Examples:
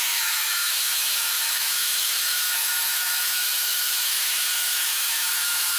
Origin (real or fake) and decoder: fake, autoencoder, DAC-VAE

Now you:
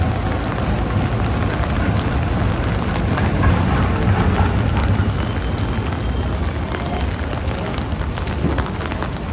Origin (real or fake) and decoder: real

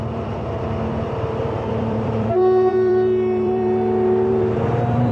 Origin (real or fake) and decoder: fake, vocoder, BigVGAN v2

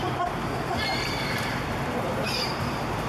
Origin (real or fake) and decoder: fake, vocoder, BigVGAN v2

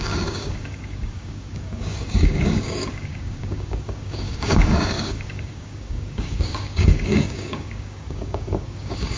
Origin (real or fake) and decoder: fake, codec, DAC